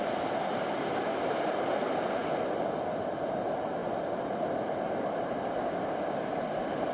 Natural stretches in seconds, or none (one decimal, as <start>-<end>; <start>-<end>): 0.0-6.9